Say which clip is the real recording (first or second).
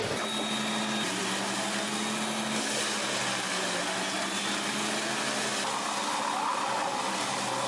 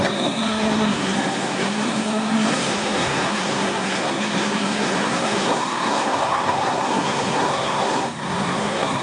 first